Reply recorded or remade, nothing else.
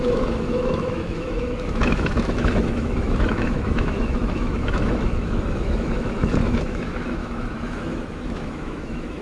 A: remade